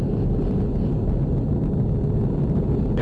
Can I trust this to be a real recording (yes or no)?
yes